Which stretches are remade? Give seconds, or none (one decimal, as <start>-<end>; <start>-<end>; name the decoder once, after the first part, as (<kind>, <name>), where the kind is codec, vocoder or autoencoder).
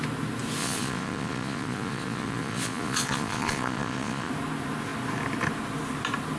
0.6-4.3 (vocoder, Vocos)